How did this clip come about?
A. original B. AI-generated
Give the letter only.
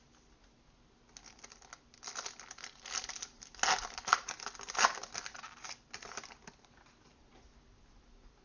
A